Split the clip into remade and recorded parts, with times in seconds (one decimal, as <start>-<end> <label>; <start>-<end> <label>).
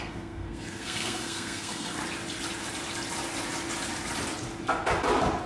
0.0-2.0 remade; 2.0-5.5 recorded